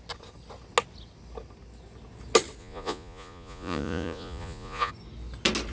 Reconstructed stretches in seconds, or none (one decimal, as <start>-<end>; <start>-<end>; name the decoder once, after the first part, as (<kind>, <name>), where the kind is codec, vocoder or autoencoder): 2.6-4.9 (vocoder, Vocos)